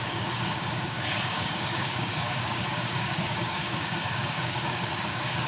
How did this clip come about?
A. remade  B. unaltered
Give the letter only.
A